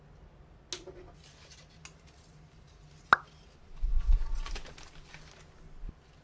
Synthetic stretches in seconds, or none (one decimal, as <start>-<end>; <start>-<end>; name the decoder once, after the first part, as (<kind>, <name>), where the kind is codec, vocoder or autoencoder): 3.9-4.5 (vocoder, Vocos)